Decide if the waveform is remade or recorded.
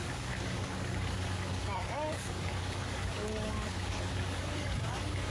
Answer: remade